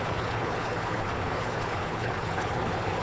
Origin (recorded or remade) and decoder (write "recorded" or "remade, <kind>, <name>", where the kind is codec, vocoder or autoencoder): remade, codec, HILCodec